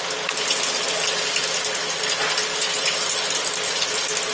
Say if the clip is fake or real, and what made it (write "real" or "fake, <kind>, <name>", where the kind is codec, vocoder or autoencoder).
real